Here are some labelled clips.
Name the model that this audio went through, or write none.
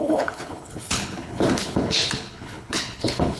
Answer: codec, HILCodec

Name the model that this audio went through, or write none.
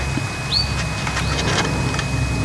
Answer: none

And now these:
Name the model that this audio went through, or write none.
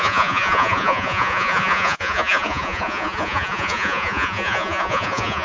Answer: vocoder, Vocos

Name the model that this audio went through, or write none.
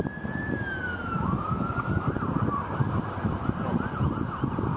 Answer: none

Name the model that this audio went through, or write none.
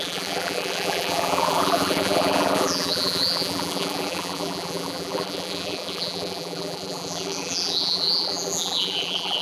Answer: vocoder, BigVGAN v2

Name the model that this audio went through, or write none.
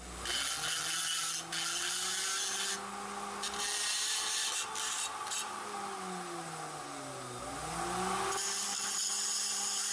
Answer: none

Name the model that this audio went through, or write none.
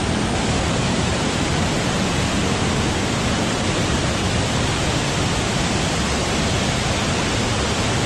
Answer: none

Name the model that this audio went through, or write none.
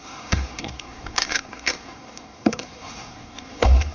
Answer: codec, SNAC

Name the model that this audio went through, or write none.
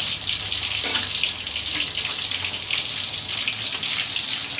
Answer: none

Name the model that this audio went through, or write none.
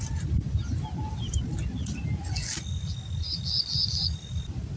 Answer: none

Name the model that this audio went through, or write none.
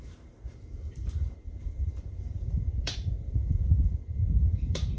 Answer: vocoder, BigVGAN v2